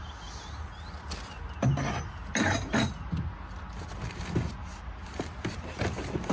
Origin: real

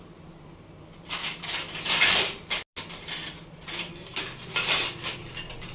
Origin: real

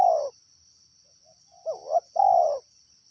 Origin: real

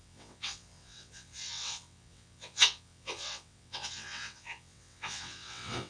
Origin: fake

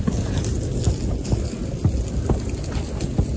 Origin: real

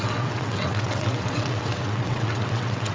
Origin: fake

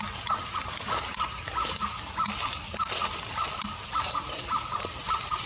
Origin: real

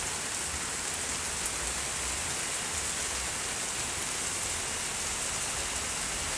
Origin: real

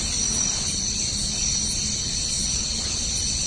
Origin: real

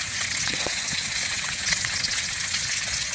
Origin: fake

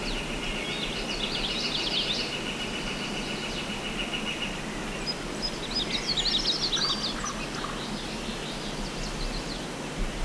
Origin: real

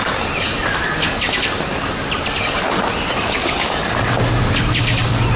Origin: real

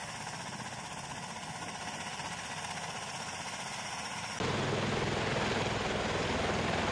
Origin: real